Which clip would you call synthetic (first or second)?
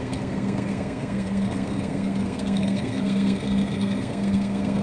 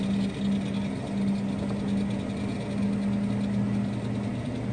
first